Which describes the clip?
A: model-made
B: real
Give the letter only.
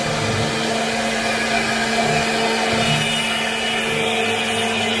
B